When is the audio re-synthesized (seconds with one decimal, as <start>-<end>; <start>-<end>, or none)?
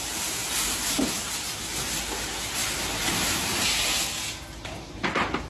0.4-1.0; 2.6-3.8